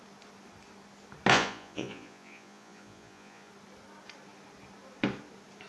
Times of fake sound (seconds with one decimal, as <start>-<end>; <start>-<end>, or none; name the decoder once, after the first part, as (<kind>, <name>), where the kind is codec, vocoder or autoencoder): 1.3-3.5 (vocoder, Vocos)